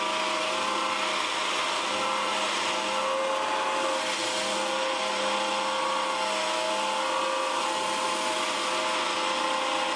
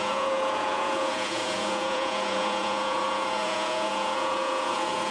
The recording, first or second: first